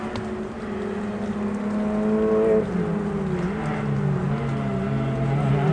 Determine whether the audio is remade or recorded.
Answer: recorded